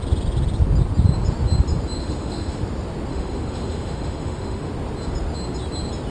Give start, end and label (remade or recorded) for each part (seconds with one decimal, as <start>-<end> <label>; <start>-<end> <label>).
0.0-2.0 recorded; 2.0-2.6 remade; 2.6-3.1 recorded; 3.1-4.7 remade; 4.7-6.1 recorded